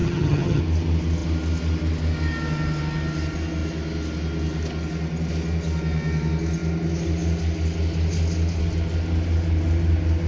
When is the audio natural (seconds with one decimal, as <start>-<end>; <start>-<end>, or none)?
0.6-10.3